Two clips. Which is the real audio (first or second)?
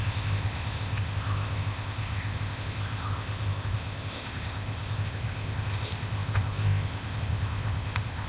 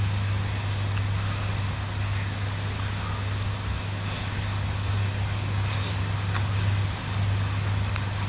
second